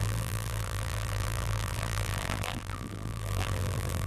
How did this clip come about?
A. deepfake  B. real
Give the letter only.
A